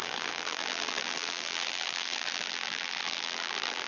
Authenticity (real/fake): fake